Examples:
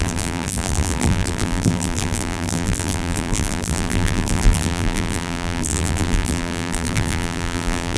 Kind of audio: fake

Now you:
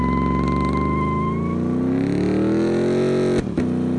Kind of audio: real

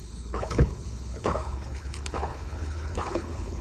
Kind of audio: fake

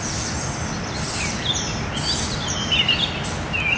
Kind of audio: real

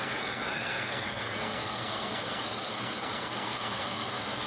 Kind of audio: fake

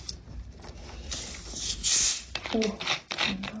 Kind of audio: real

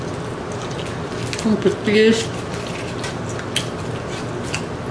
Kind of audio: real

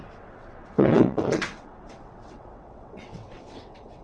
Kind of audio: fake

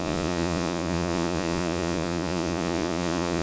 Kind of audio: fake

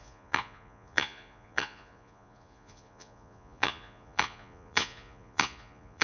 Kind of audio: fake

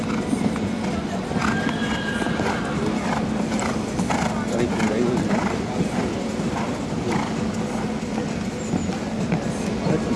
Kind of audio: real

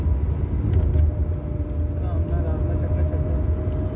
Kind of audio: real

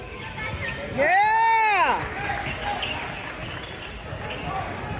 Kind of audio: real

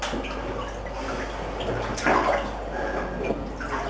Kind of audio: real